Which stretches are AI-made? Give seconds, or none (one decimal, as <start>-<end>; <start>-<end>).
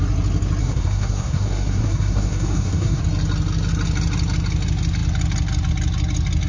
0.6-3.0